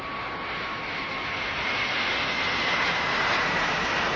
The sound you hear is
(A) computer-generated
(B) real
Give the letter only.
B